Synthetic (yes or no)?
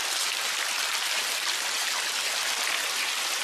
no